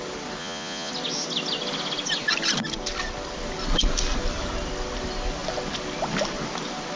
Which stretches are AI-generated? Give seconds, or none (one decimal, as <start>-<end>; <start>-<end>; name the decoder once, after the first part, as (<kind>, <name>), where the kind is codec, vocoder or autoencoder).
0.4-0.9 (vocoder, Vocos)

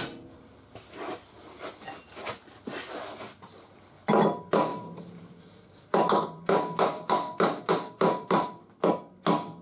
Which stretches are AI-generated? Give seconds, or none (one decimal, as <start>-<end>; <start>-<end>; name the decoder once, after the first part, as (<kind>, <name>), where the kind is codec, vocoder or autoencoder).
2.2-2.7 (vocoder, BigVGAN v2); 4.7-8.6